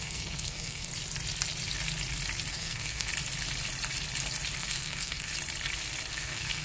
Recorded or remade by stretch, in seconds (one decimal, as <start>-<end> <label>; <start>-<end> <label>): 0.0-0.9 remade; 0.9-2.5 recorded; 2.5-3.1 remade; 3.1-4.6 recorded; 4.6-5.3 remade; 5.3-6.1 recorded; 6.1-6.6 remade

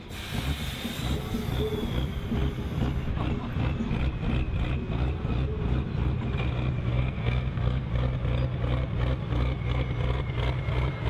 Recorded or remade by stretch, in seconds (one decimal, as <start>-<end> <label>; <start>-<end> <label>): 0.0-6.9 recorded; 6.9-7.9 remade; 7.9-11.1 recorded

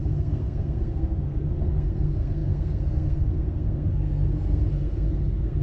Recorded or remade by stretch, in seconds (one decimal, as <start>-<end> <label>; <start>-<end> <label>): 0.0-5.6 remade

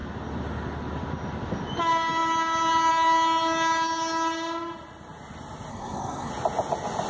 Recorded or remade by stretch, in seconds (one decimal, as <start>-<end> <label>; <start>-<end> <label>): 0.0-5.7 recorded; 5.7-6.3 remade; 6.3-7.1 recorded

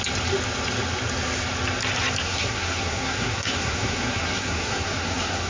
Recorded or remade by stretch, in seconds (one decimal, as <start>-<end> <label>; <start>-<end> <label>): 0.0-2.2 recorded; 2.2-5.5 remade

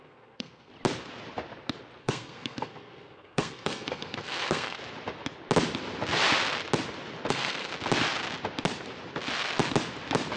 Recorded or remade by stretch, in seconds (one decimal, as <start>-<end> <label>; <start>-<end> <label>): 0.0-0.7 remade; 0.7-2.0 recorded; 2.0-4.8 remade; 4.8-7.3 recorded; 7.3-7.7 remade; 7.7-10.4 recorded

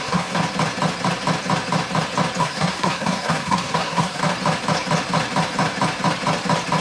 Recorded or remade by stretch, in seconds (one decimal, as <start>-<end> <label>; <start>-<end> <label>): 0.0-0.4 remade; 0.4-2.4 recorded; 2.4-4.2 remade; 4.2-6.8 recorded